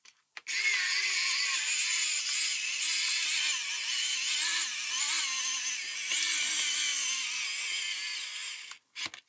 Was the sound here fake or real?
real